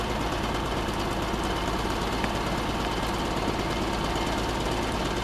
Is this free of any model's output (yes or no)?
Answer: yes